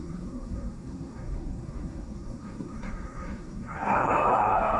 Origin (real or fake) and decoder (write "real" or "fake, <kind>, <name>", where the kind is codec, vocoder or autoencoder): fake, codec, SNAC